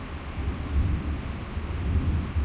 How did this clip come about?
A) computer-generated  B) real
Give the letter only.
B